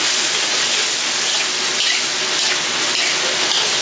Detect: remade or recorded recorded